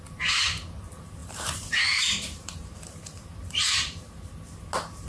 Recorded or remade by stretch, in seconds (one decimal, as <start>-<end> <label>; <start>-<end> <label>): 0.0-1.2 recorded; 1.2-4.3 remade; 4.3-5.1 recorded